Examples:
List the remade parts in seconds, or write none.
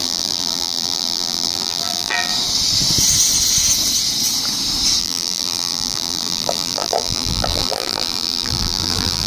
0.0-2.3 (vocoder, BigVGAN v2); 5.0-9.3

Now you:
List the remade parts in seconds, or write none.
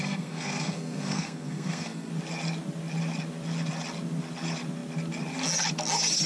0.0-2.1 (codec, SNAC)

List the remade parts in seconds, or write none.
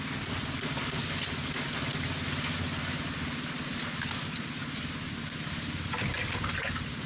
none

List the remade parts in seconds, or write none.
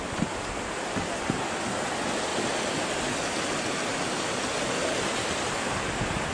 3.9-4.4 (vocoder, BigVGAN v2)